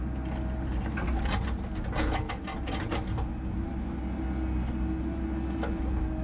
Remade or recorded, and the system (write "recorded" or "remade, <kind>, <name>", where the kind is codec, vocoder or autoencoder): recorded